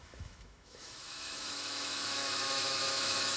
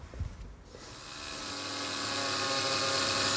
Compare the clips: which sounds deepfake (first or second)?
first